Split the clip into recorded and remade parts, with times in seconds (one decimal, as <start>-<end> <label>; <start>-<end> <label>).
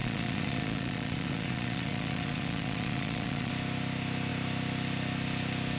0.0-3.5 remade; 3.5-5.8 recorded